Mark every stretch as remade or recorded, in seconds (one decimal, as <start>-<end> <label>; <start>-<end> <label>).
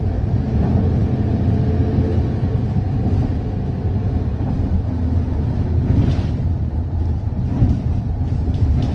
0.0-1.0 remade; 1.0-6.0 recorded; 6.0-8.9 remade